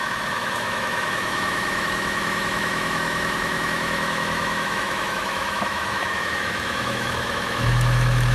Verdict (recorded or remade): remade